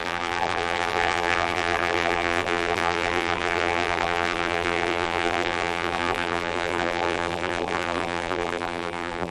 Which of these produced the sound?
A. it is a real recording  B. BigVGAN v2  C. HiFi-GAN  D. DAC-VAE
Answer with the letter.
B